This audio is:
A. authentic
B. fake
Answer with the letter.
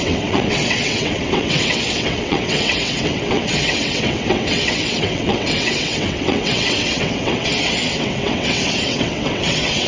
B